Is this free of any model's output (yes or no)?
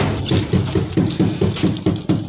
yes